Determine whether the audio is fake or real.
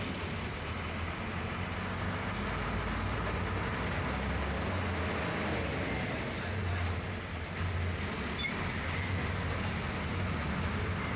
real